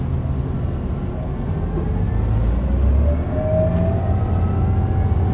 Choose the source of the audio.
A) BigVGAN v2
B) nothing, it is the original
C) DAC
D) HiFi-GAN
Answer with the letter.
B